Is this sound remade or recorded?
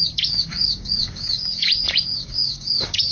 remade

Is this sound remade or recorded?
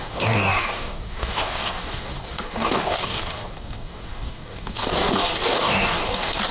remade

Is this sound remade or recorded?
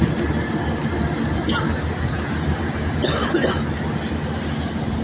recorded